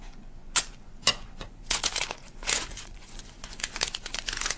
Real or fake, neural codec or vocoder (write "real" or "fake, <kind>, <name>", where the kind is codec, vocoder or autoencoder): fake, vocoder, Vocos